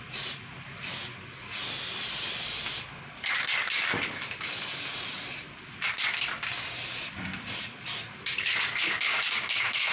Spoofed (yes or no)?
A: no